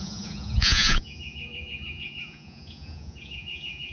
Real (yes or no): no